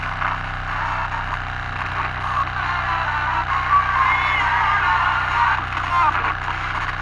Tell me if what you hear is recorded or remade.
recorded